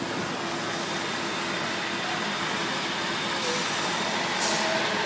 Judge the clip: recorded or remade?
recorded